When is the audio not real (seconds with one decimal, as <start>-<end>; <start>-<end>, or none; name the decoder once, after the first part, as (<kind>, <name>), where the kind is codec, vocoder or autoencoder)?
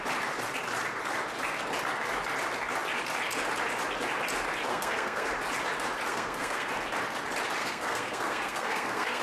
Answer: 4.7-5.3 (codec, SNAC); 6.1-6.7; 7.6-9.2